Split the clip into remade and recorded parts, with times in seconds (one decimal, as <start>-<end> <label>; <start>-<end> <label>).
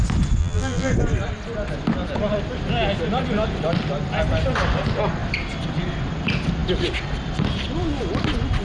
0.0-0.4 recorded; 0.4-0.9 remade; 0.9-8.6 recorded